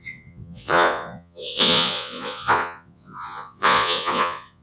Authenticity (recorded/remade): remade